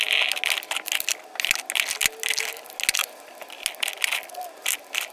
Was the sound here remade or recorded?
recorded